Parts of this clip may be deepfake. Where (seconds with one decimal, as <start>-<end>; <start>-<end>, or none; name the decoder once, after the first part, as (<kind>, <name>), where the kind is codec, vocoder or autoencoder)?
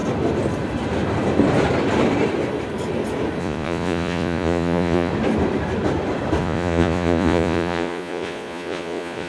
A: 3.4-5.1 (vocoder, Vocos); 6.4-9.3